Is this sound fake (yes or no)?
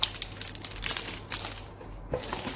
no